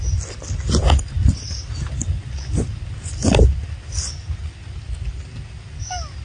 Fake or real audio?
real